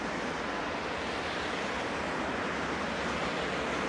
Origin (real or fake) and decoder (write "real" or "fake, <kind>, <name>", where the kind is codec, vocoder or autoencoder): real